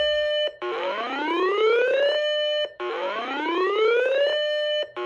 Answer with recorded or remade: remade